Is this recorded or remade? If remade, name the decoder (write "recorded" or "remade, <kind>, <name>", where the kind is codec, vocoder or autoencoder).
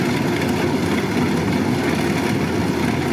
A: recorded